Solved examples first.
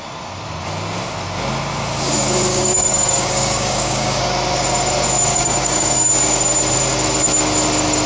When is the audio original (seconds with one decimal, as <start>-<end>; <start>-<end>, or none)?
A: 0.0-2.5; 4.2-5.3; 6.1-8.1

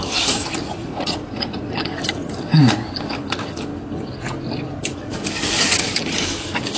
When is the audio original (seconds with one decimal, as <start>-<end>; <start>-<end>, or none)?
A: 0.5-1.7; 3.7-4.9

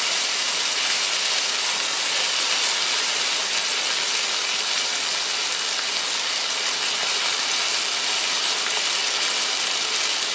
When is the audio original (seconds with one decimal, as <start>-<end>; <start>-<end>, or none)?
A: 0.0-10.3